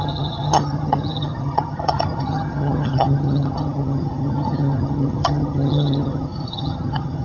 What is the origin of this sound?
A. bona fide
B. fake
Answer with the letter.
B